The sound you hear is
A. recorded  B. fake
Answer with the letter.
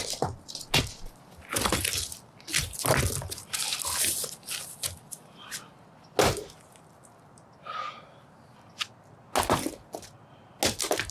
A